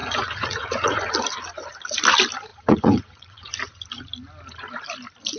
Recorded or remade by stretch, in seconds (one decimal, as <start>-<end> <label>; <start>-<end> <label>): 0.0-1.1 remade; 1.1-2.5 recorded; 2.5-3.5 remade; 3.5-5.4 recorded